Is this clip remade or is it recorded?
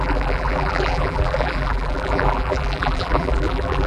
remade